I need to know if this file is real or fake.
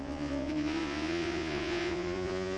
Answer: fake